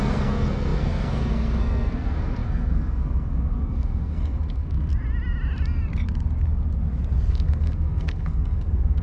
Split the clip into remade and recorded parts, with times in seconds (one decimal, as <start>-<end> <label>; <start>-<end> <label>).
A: 0.0-4.9 remade; 4.9-7.3 recorded; 7.3-9.0 remade